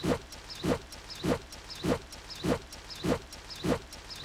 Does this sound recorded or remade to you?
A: recorded